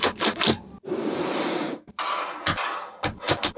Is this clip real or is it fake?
real